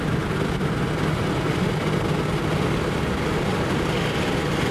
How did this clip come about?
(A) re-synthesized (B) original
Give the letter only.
B